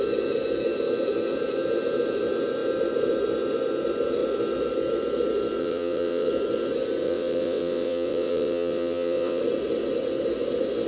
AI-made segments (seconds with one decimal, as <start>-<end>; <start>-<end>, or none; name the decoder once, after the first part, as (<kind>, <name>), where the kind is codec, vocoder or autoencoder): 5.6-6.3 (vocoder, WaveNeXt); 7.0-9.4